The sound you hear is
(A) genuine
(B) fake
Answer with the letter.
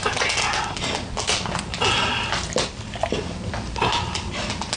A